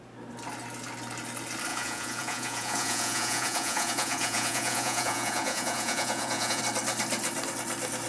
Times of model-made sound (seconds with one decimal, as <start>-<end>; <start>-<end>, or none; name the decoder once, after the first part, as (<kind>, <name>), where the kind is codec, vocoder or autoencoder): 1.7-6.6 (vocoder, Vocos)